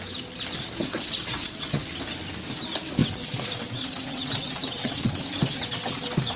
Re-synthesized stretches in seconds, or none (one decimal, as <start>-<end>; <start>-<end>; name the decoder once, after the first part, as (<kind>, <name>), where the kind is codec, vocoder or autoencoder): 0.8-1.8 (vocoder, WaveNeXt); 3.0-6.4